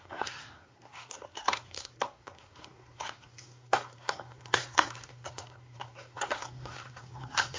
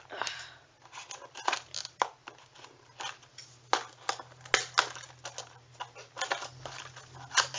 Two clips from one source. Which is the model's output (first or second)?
first